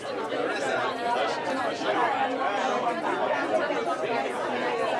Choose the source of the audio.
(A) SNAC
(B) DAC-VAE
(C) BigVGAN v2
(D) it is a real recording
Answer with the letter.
D